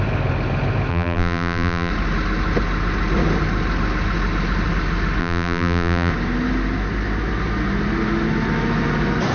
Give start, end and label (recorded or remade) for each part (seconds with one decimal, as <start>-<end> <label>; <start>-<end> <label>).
0.0-0.9 recorded; 0.9-1.9 remade; 1.9-5.2 recorded; 5.2-6.1 remade; 6.1-9.3 recorded